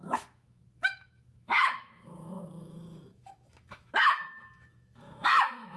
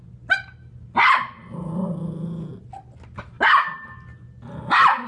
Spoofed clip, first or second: first